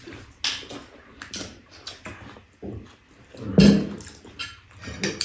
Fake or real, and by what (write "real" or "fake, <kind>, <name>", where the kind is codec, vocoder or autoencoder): real